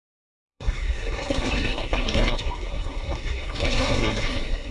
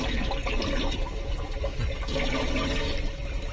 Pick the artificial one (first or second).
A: first